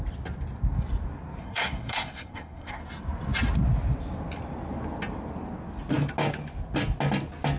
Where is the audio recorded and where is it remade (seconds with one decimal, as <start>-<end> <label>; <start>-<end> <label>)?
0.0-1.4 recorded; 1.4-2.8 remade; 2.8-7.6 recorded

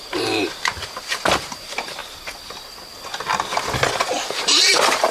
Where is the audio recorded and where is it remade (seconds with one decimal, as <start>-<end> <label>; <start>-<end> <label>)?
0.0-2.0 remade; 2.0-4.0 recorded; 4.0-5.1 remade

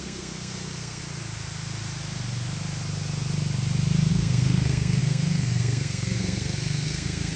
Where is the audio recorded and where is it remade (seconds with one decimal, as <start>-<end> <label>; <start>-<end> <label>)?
0.0-1.0 remade; 1.0-4.1 recorded; 4.1-7.4 remade

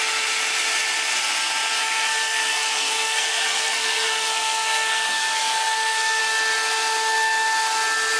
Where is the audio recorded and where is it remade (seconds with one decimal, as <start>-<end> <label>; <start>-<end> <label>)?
0.0-1.8 recorded; 1.8-6.2 remade; 6.2-8.2 recorded

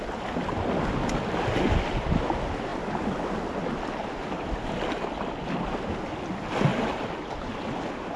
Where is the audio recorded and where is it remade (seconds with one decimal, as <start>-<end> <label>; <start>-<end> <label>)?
0.0-8.2 recorded

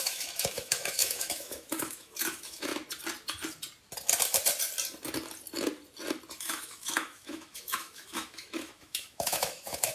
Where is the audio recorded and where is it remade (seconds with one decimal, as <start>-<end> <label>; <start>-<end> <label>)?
0.0-2.7 remade; 2.7-6.4 recorded; 6.4-9.9 remade

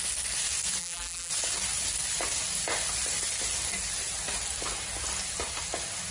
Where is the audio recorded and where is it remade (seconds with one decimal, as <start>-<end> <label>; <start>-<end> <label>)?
0.0-0.8 recorded; 0.8-1.3 remade; 1.3-6.1 recorded